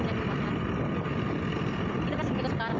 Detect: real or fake real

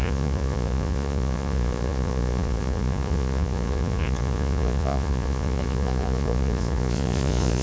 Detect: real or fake fake